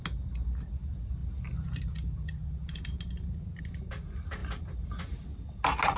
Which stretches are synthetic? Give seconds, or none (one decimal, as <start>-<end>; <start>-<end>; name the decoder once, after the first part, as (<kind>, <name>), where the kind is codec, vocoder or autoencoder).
none